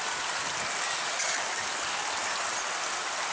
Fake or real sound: real